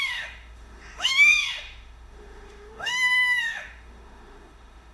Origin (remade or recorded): remade